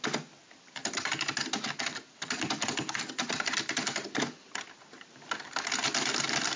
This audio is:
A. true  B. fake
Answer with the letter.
A